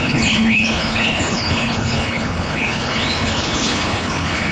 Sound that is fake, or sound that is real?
fake